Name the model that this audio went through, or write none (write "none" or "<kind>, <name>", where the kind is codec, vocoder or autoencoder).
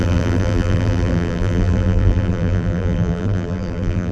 vocoder, BigVGAN v2